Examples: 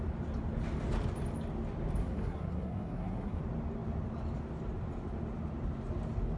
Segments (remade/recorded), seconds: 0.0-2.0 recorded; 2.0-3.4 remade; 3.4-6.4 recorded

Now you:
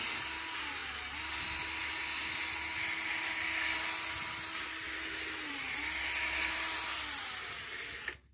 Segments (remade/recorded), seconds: 0.0-8.3 recorded

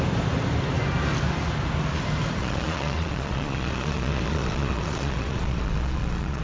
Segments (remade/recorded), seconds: 0.0-2.4 recorded; 2.4-6.4 remade